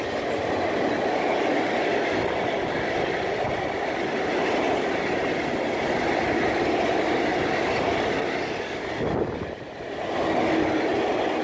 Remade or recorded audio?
recorded